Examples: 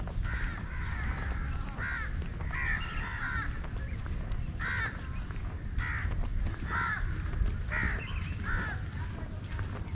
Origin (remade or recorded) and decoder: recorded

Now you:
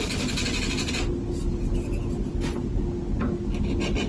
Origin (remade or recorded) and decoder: recorded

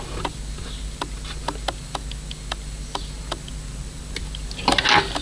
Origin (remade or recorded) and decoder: recorded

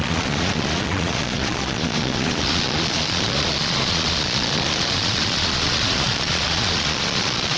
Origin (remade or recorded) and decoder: remade, vocoder, Vocos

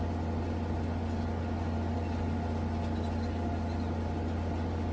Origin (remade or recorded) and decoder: recorded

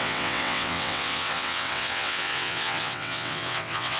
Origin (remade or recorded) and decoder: remade, vocoder, WaveNeXt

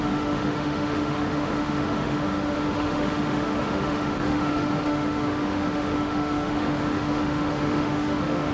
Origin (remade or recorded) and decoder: remade, autoencoder, DAC-VAE